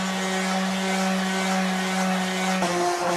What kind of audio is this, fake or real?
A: real